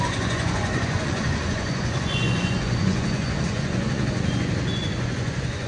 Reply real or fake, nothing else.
fake